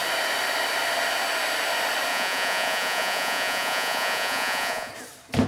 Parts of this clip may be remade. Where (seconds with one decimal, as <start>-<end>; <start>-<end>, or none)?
2.1-4.9